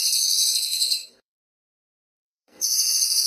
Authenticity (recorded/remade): remade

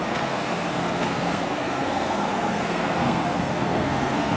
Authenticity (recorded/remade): remade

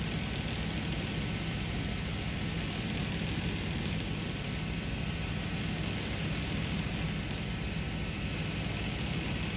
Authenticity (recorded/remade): recorded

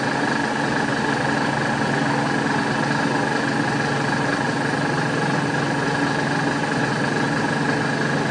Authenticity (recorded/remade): recorded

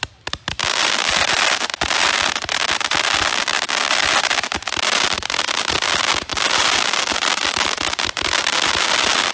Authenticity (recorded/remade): recorded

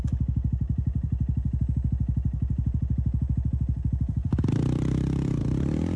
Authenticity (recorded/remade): remade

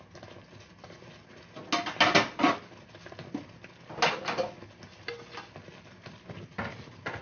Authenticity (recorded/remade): recorded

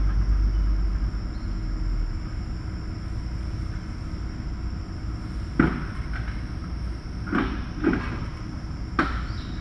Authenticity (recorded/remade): recorded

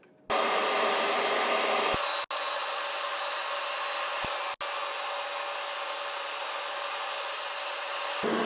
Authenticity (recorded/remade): recorded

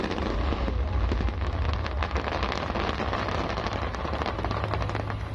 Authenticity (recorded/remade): recorded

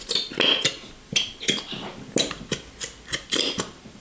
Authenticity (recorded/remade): recorded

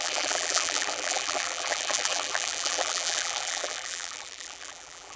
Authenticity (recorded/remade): remade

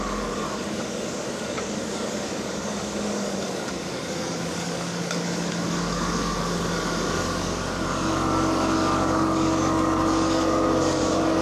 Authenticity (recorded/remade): remade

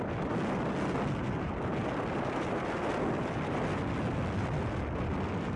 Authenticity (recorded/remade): recorded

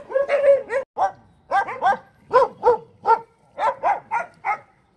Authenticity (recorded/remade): recorded